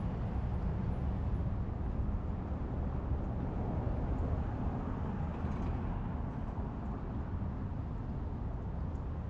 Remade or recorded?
recorded